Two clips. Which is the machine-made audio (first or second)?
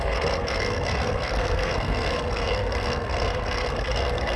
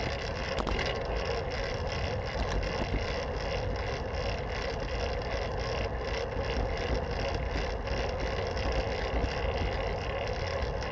first